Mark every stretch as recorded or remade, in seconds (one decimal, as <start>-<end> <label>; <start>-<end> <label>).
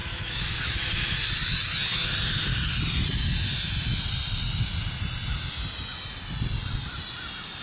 0.0-1.3 remade; 1.3-7.6 recorded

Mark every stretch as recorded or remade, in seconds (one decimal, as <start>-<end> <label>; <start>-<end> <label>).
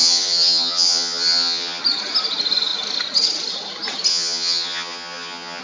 0.0-1.8 remade; 1.8-4.1 recorded; 4.1-5.6 remade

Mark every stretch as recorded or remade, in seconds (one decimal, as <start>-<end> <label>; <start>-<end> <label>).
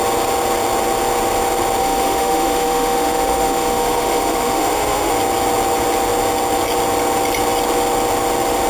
0.0-1.8 recorded; 1.8-5.1 remade; 5.1-8.7 recorded